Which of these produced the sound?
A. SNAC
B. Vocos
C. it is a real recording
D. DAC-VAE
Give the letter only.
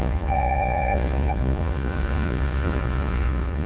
B